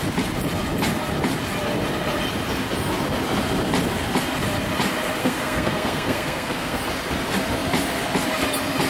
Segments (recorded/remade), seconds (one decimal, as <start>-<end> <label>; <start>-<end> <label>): 0.0-5.2 recorded; 5.2-6.8 remade; 6.8-8.9 recorded